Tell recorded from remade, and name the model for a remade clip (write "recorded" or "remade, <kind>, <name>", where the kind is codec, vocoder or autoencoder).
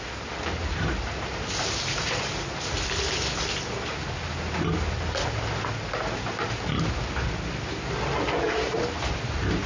recorded